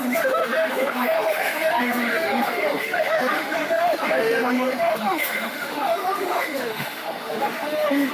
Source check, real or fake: fake